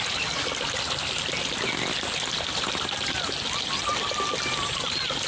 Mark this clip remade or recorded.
recorded